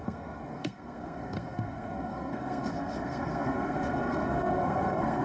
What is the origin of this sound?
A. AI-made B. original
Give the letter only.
A